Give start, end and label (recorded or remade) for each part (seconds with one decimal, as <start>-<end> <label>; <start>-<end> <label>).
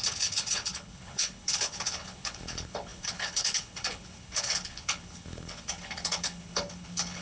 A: 0.0-7.2 remade